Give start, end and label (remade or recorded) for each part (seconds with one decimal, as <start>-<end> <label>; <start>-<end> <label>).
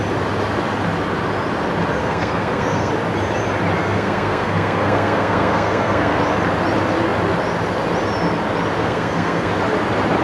0.0-2.0 recorded; 2.0-2.9 remade; 2.9-3.8 recorded; 3.8-6.2 remade; 6.2-8.8 recorded; 8.8-9.5 remade; 9.5-10.2 recorded